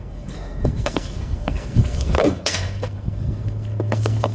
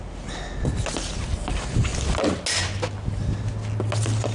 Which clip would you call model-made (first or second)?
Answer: first